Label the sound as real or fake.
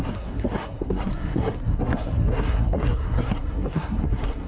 fake